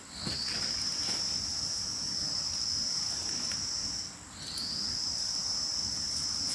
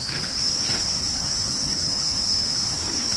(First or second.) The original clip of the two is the first